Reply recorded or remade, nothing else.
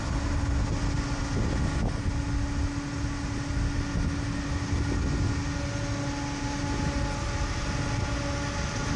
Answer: recorded